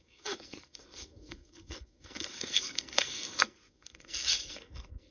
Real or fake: fake